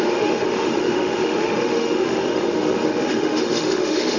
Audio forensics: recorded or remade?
remade